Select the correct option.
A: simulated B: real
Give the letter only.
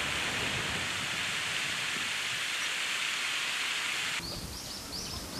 B